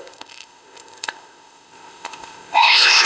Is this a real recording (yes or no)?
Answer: no